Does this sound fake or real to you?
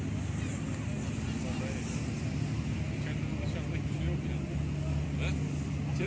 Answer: real